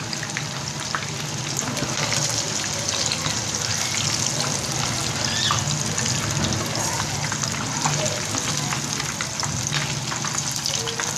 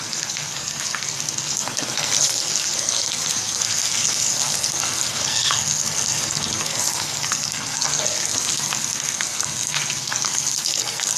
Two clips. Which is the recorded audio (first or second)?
first